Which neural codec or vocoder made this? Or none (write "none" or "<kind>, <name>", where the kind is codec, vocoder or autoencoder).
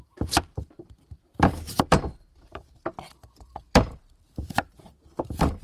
vocoder, BigVGAN v2